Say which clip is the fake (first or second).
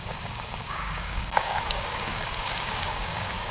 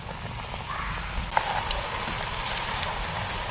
first